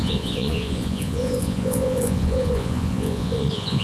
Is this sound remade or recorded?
remade